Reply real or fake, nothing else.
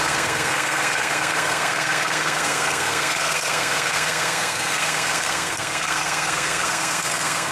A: fake